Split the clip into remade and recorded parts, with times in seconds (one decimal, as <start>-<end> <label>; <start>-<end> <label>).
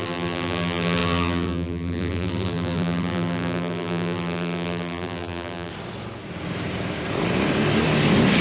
0.0-5.7 remade; 5.7-8.4 recorded